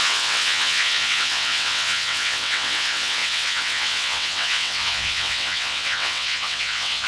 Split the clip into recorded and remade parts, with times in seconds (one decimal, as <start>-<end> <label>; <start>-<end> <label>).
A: 0.0-7.1 remade